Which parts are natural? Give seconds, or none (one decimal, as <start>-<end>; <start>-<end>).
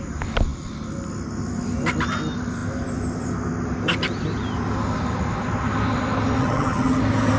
0.0-6.4; 7.0-7.4